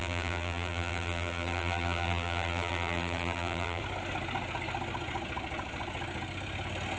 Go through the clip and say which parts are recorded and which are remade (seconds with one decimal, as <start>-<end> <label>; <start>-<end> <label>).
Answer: 0.0-3.8 remade; 3.8-7.0 recorded